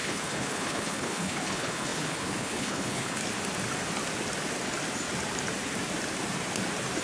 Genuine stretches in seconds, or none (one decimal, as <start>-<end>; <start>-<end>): 3.2-7.0